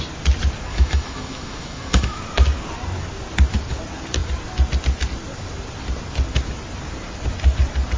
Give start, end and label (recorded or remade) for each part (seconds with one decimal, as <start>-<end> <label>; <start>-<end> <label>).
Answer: 0.0-0.7 recorded; 0.7-2.2 remade; 2.2-8.0 recorded